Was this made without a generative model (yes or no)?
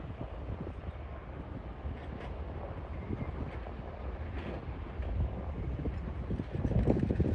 yes